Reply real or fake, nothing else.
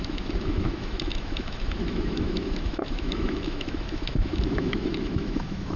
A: fake